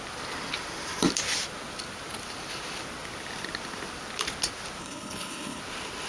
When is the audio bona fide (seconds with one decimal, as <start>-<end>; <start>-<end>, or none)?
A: 0.0-4.8; 5.6-6.1